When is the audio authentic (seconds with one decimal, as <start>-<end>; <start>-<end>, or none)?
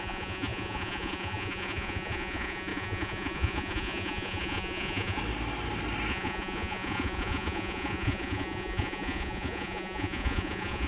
5.2-6.1